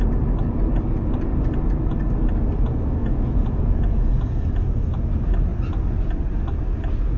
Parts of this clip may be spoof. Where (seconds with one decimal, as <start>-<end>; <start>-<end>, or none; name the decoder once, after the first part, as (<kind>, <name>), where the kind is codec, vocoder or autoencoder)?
3.0-4.4 (vocoder, Vocos)